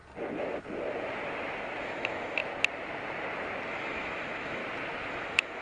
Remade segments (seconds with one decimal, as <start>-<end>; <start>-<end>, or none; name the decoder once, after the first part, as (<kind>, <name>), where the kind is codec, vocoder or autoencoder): 1.8-2.4 (autoencoder, DAC-VAE); 3.7-4.6; 5.1-5.6